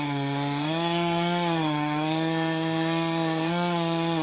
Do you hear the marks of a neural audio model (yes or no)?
yes